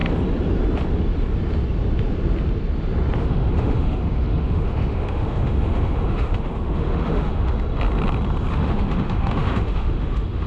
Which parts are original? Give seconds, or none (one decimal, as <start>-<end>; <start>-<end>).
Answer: 0.0-3.2; 7.5-8.5